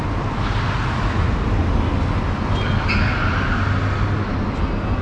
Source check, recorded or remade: recorded